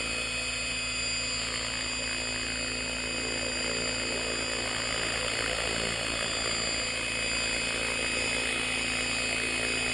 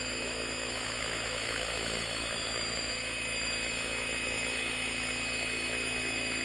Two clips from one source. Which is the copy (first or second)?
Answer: second